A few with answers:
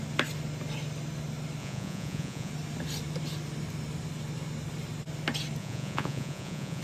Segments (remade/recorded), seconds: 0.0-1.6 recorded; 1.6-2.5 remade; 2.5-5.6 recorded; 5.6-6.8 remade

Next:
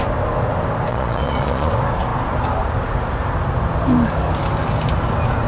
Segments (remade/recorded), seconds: 0.0-0.9 recorded; 0.9-1.7 remade; 1.7-5.5 recorded

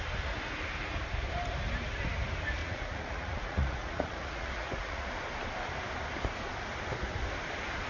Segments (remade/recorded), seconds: 0.0-2.6 recorded; 2.6-5.1 remade; 5.1-7.9 recorded

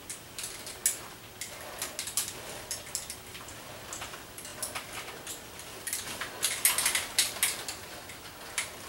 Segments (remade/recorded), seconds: 0.0-8.9 recorded

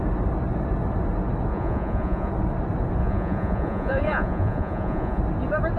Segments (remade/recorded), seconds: 0.0-1.5 recorded; 1.5-2.3 remade; 2.3-3.0 recorded; 3.0-5.2 remade; 5.2-5.8 recorded

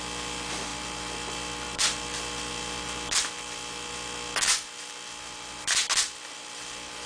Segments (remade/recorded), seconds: 0.0-7.1 recorded

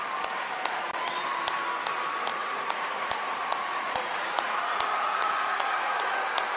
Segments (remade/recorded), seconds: 0.0-2.3 recorded; 2.3-6.0 remade; 6.0-6.6 recorded